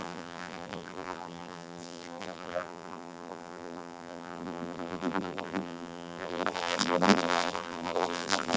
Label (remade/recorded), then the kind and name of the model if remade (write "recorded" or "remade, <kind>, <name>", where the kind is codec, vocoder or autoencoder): remade, vocoder, BigVGAN v2